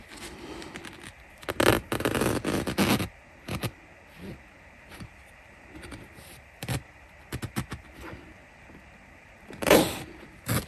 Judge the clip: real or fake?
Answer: real